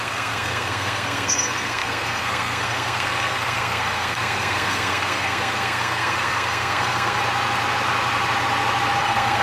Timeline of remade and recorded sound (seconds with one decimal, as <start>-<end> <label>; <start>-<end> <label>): 0.0-7.2 remade; 7.2-9.0 recorded; 9.0-9.4 remade